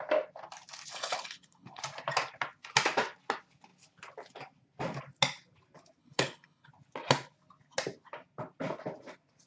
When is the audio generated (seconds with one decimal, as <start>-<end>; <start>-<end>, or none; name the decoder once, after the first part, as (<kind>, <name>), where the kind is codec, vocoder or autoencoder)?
0.9-1.8 (codec, HILCodec); 6.0-6.7